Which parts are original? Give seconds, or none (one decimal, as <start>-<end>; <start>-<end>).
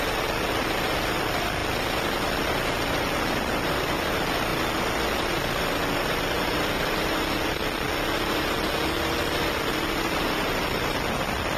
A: 0.0-11.6